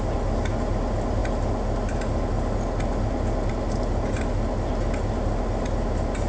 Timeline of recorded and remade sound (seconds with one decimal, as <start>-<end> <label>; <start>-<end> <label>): 0.0-6.3 recorded